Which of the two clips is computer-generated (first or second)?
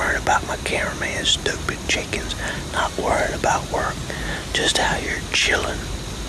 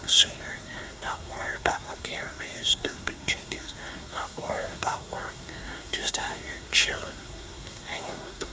second